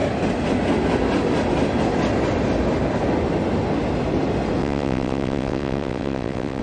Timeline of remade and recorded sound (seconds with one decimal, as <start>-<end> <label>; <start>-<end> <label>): 0.0-4.6 recorded; 4.6-6.6 remade